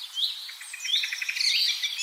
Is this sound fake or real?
real